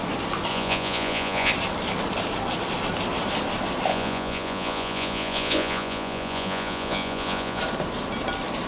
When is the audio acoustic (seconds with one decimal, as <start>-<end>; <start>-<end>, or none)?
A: 0.0-0.5; 1.5-3.9; 7.6-8.7